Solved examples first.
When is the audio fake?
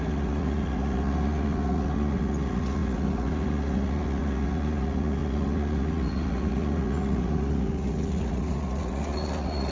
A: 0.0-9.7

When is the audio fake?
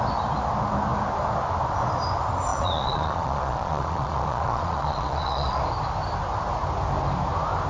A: 2.5-5.6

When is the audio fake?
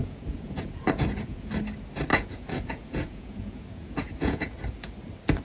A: 0.0-1.5; 2.1-4.9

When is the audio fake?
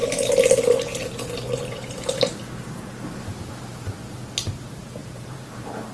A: 5.0-5.5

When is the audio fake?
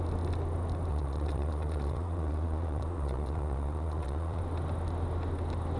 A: 0.9-4.4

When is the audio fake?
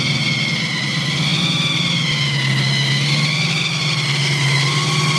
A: none